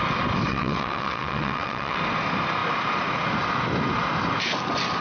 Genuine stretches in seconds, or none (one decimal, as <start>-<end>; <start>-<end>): 0.0-0.5; 2.0-5.0

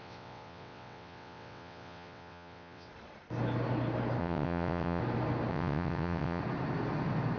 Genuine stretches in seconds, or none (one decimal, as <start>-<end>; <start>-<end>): 2.9-4.2; 5.0-5.5; 6.4-7.4

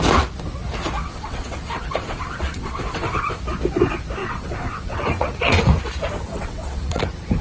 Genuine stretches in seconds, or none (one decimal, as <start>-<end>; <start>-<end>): 0.0-1.0; 3.4-4.2; 5.6-6.3; 7.0-7.4

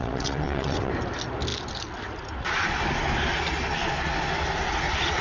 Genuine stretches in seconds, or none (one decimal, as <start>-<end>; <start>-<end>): 0.9-5.2

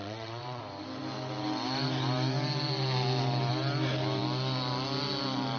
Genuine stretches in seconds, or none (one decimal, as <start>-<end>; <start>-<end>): 0.6-5.6

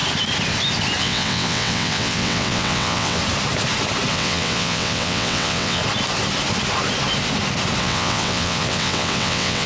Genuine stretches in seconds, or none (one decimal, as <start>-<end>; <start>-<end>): 0.0-1.0; 3.2-4.1; 5.8-7.8